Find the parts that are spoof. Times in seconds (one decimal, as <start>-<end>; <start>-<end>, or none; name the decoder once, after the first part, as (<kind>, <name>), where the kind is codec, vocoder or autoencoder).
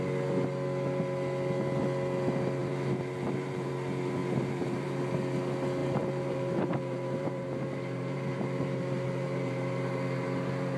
2.6-3.7 (vocoder, BigVGAN v2); 4.2-5.1; 5.8-10.8